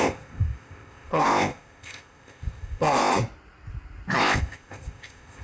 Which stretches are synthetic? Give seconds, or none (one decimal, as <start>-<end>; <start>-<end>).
0.0-3.1; 4.2-5.4